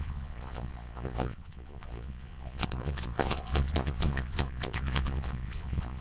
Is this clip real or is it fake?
fake